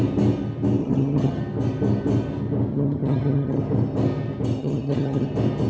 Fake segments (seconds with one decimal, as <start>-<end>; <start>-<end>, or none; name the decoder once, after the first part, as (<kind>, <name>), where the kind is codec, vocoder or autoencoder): 0.8-1.4 (vocoder, HiFi-GAN); 2.7-3.6; 4.6-5.3